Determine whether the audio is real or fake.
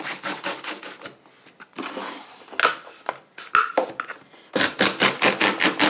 real